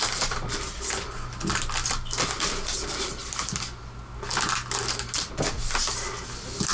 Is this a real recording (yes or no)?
yes